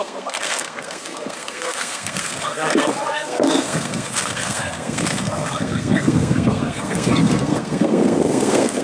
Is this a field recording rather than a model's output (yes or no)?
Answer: no